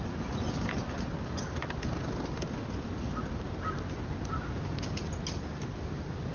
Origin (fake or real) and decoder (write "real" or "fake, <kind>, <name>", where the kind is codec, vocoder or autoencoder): real